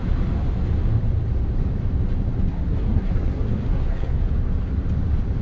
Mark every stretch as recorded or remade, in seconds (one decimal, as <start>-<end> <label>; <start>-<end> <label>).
0.0-2.5 recorded; 2.5-4.2 remade; 4.2-5.4 recorded